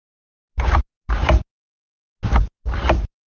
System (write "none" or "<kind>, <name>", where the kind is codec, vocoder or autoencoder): none